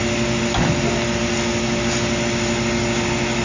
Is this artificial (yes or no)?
no